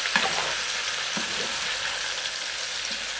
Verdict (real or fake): real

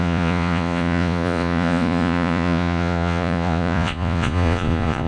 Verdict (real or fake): fake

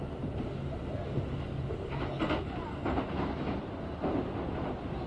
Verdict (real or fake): real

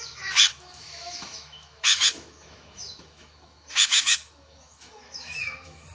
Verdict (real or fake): fake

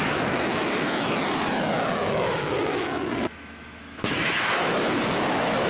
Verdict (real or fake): fake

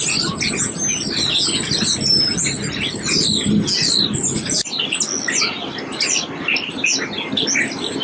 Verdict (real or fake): real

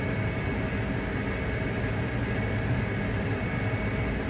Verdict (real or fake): real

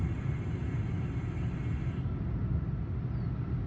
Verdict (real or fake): real